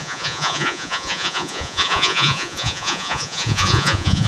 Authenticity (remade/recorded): remade